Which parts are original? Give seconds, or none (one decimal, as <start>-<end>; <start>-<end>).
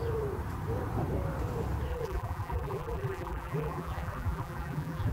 0.0-1.9